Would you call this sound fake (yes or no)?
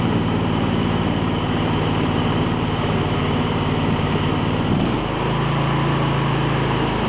yes